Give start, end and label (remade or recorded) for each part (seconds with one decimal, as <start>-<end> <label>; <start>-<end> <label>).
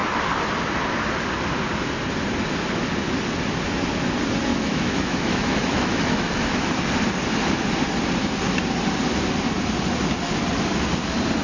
0.0-4.5 recorded; 4.5-6.7 remade; 6.7-11.4 recorded